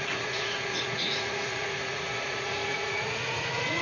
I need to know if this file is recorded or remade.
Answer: remade